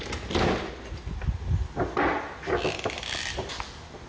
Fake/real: real